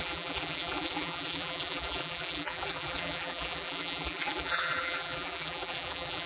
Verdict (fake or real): fake